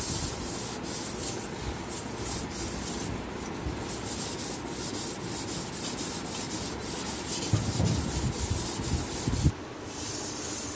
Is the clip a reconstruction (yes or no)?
no